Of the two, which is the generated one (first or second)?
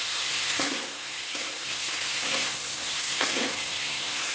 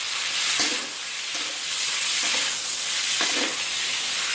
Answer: first